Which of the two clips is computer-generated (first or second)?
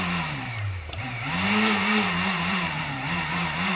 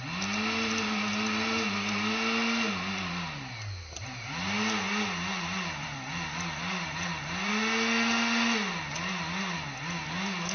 first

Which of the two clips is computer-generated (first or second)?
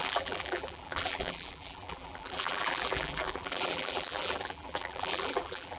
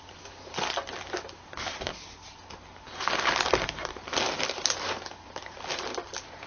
first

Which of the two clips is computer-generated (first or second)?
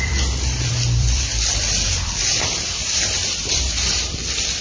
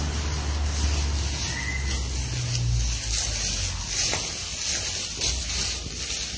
first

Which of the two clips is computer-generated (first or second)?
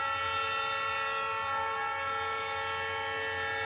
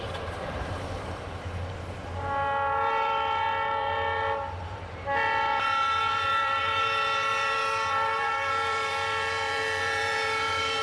second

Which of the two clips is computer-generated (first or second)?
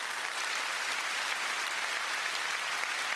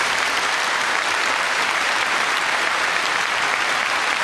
second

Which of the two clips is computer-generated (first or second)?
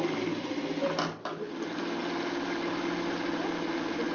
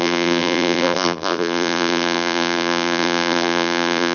second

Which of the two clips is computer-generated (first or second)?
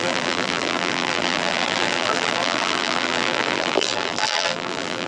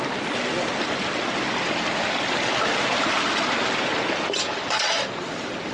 first